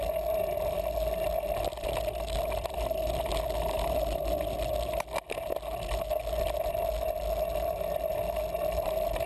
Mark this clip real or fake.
real